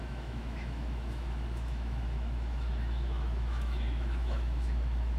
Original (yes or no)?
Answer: no